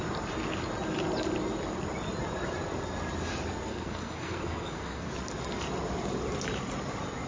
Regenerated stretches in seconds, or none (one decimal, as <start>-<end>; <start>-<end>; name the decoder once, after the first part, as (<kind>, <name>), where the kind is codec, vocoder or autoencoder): 3.7-5.1 (codec, SNAC)